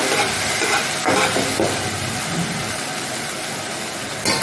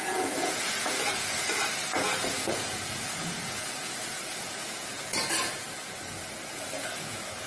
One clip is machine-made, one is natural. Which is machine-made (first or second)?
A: second